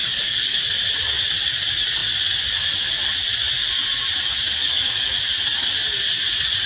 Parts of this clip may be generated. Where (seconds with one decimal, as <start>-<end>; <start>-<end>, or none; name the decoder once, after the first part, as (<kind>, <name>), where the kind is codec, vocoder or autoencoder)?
0.0-0.6 (codec, DAC); 4.6-5.2